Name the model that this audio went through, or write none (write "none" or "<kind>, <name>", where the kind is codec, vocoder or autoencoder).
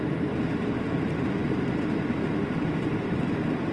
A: vocoder, BigVGAN v2